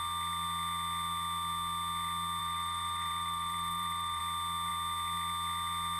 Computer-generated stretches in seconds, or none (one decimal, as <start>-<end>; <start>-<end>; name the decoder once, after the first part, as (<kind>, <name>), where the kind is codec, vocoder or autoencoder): 2.4-4.2 (vocoder, BigVGAN v2)